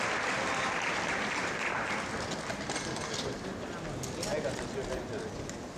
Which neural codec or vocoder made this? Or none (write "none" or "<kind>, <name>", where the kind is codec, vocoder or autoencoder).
none